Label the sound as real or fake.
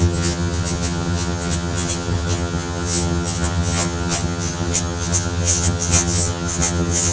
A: fake